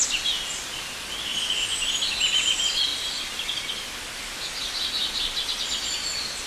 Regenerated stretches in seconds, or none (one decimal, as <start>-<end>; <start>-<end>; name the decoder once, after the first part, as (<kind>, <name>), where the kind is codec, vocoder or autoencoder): none